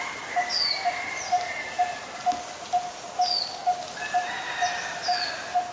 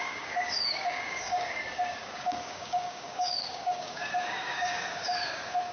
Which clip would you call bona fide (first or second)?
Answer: first